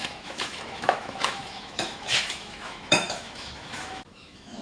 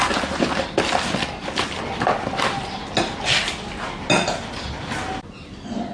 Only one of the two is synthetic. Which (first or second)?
first